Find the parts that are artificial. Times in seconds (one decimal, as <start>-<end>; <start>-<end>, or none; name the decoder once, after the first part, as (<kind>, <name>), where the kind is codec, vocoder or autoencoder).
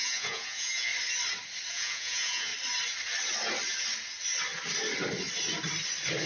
0.0-0.9 (vocoder, Vocos); 1.7-2.5